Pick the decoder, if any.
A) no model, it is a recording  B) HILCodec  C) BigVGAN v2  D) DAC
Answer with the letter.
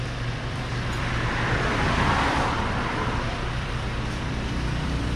C